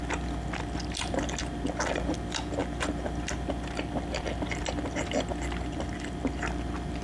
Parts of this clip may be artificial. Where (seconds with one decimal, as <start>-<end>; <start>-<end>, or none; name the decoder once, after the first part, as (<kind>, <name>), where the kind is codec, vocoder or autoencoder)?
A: none